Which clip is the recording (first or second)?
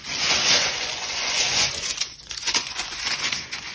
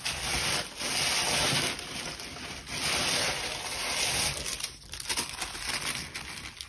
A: second